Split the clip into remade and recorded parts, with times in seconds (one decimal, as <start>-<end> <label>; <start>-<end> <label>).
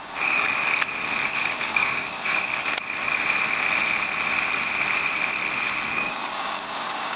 0.0-0.5 remade; 0.5-1.4 recorded; 1.4-2.5 remade; 2.5-6.0 recorded; 6.0-7.2 remade